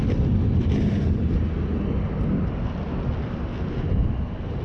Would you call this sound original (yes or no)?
yes